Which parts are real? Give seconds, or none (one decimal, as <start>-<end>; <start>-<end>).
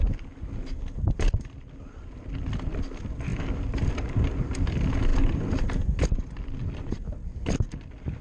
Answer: 0.0-8.2